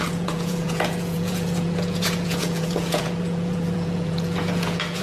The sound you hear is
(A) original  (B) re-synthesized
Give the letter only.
B